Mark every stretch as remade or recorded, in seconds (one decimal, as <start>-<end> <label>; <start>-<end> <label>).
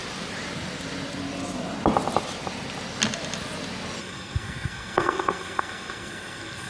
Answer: 0.0-4.0 recorded; 4.0-6.7 remade